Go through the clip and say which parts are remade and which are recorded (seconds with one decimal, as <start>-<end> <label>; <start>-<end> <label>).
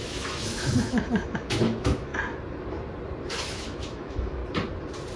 0.0-2.1 remade; 2.1-3.4 recorded; 3.4-4.4 remade; 4.4-5.2 recorded